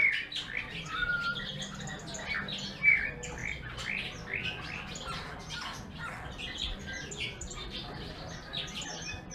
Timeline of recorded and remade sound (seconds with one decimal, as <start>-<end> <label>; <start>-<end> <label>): 0.0-9.3 recorded